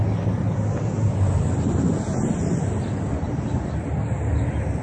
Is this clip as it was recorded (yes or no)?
yes